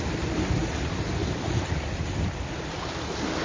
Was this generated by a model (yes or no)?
yes